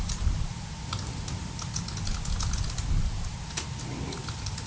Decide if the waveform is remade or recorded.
recorded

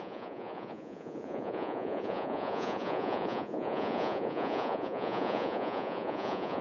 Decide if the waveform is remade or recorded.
remade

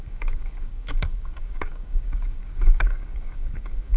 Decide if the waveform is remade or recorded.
remade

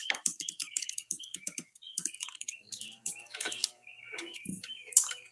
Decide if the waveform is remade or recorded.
remade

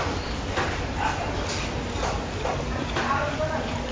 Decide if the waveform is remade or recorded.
recorded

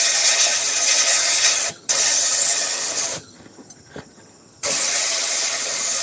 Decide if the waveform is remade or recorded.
remade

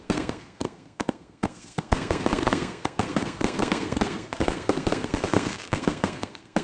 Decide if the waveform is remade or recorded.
remade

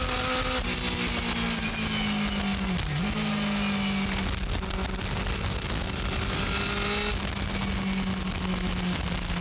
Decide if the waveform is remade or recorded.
recorded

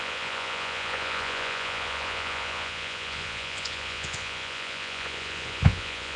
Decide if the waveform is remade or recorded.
remade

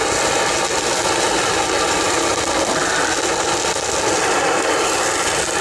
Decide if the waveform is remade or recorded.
recorded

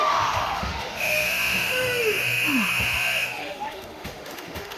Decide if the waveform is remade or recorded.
remade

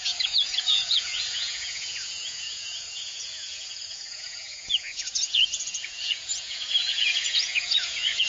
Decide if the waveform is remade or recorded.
remade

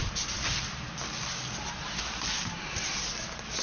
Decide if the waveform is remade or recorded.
recorded